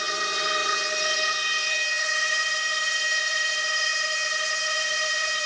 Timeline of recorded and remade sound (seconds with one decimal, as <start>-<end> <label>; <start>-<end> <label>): 0.0-5.5 remade